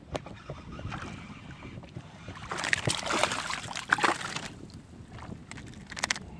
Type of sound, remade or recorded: recorded